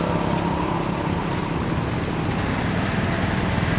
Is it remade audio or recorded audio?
recorded